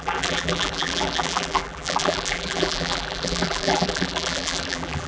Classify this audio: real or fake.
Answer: fake